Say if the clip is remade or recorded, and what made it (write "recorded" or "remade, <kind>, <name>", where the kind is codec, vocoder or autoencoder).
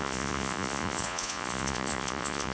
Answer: remade, vocoder, Vocos